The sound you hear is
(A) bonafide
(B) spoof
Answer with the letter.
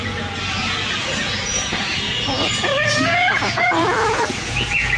B